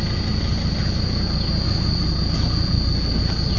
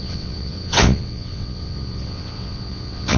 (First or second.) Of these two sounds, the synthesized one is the second